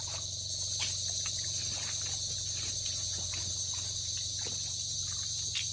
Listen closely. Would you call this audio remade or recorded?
recorded